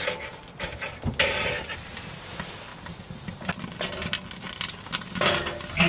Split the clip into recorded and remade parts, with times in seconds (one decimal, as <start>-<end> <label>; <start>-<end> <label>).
0.0-5.9 recorded